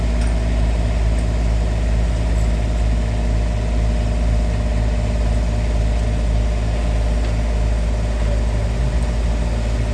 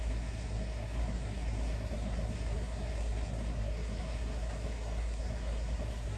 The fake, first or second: second